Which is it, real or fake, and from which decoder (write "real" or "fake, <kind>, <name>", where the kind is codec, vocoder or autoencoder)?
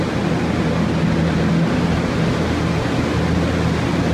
real